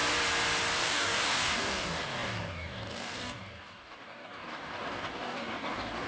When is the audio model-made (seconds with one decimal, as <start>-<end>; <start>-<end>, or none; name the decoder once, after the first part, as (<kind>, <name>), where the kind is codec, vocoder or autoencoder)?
0.8-6.1 (codec, DAC)

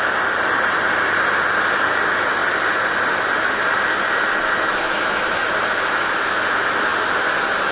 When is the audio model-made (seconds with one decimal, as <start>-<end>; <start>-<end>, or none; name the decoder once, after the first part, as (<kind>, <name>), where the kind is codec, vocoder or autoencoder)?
none